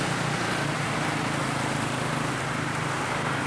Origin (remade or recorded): recorded